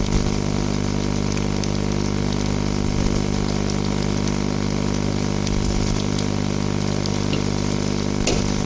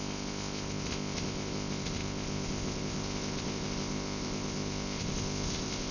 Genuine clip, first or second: first